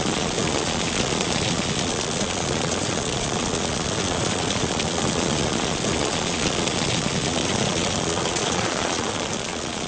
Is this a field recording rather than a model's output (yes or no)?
no